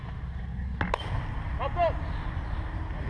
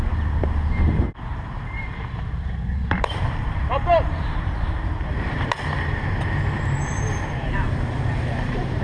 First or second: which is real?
first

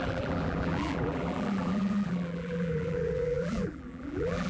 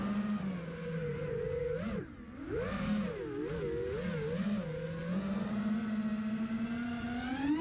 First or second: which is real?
second